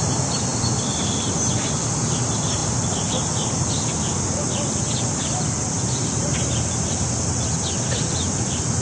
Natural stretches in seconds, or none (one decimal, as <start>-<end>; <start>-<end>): 2.6-7.2